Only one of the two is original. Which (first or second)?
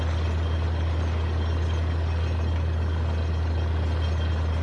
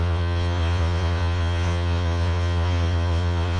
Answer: first